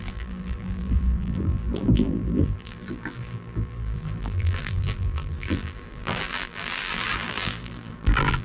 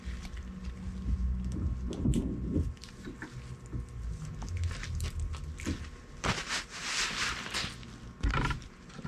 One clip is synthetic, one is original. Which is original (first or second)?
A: second